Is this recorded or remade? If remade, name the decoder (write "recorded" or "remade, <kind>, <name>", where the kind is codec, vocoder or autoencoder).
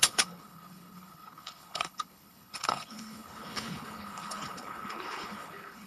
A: remade, codec, HILCodec